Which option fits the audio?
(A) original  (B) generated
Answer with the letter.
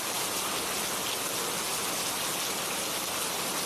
A